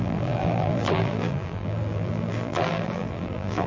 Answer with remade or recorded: remade